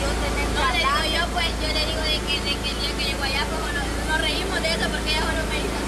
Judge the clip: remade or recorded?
recorded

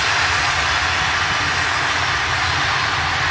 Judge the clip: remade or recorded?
recorded